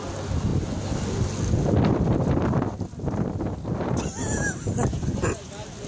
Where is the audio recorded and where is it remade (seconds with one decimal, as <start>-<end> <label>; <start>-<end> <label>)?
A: 0.0-4.9 recorded; 4.9-5.5 remade; 5.5-5.9 recorded